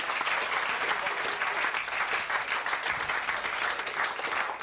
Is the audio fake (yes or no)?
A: no